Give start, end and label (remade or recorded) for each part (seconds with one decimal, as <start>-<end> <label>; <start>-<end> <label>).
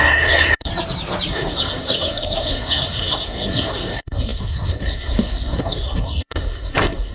0.0-0.7 remade; 0.7-1.3 recorded; 1.3-7.1 remade